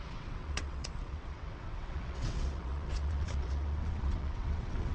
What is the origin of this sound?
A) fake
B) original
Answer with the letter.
A